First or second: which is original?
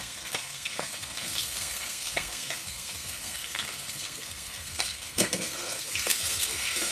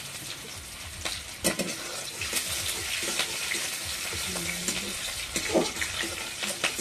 second